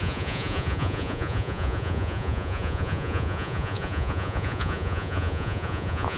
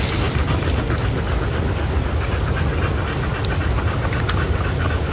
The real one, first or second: second